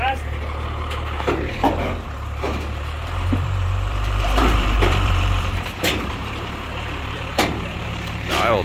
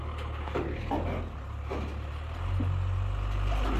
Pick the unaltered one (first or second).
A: second